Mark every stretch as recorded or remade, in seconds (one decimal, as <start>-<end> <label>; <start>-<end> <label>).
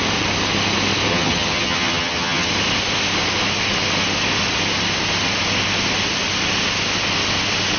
0.0-1.1 recorded; 1.1-2.5 remade; 2.5-7.8 recorded